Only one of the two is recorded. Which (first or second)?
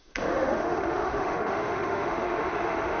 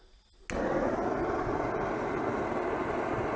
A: second